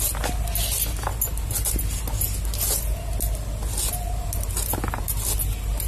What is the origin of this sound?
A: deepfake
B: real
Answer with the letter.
B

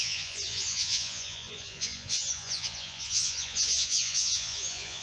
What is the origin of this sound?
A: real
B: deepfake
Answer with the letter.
B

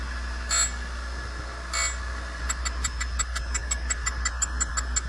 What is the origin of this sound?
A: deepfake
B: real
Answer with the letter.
B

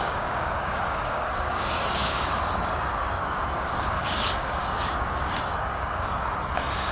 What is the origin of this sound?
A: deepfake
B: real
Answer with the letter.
A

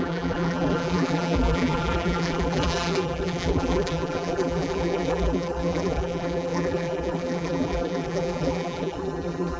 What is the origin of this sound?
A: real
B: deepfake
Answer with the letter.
B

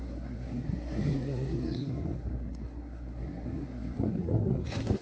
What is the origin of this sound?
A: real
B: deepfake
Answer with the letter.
B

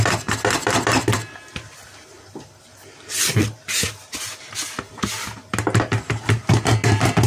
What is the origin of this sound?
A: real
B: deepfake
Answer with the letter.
A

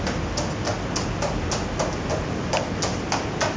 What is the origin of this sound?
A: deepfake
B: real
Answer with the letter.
B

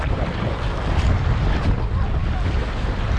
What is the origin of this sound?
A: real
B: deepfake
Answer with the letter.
A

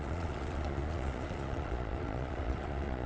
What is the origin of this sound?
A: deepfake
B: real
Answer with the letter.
A